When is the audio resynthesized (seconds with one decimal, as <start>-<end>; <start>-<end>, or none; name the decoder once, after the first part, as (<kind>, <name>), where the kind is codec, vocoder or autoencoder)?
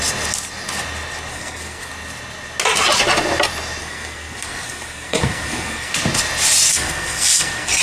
1.3-1.9 (codec, SNAC); 3.8-5.9; 6.7-7.8